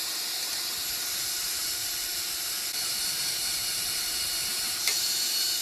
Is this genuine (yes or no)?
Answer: yes